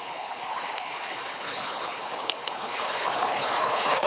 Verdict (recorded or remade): remade